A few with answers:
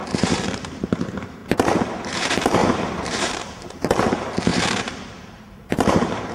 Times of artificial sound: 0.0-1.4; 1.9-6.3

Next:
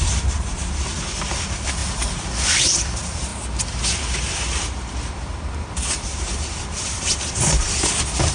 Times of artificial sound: 0.0-3.3; 4.2-8.3

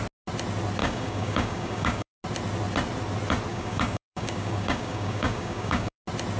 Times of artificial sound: 0.8-2.2; 3.5-6.0

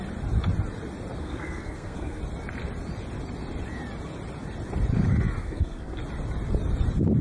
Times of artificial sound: 1.2-2.2; 5.4-6.0

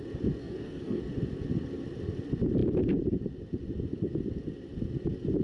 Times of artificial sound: 0.4-1.0

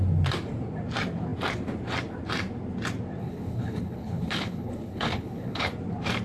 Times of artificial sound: 3.2-5.7